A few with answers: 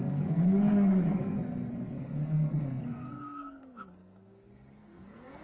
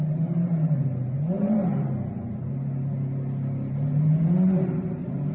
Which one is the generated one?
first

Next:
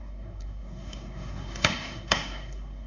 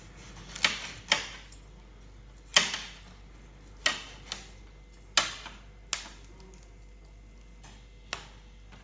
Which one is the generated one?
first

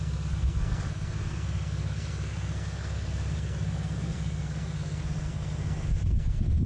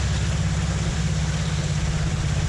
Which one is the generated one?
first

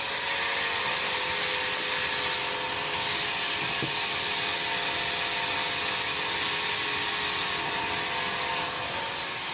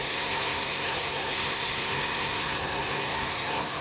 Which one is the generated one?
second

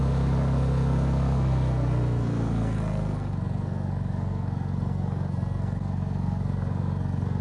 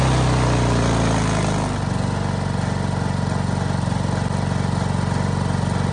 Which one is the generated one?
first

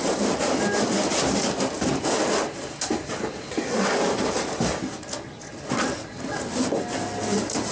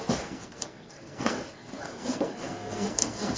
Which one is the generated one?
second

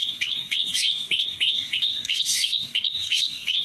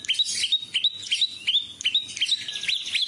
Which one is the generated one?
first